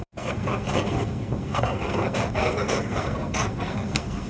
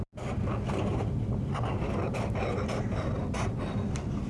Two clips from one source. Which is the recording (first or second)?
second